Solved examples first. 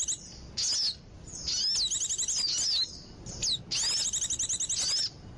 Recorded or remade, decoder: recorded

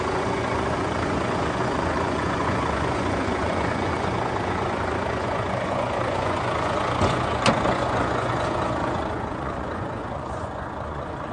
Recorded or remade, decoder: remade, vocoder, Vocos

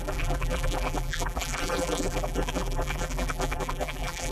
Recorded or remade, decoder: remade, vocoder, BigVGAN v2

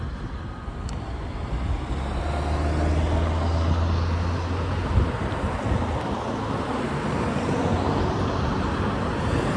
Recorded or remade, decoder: recorded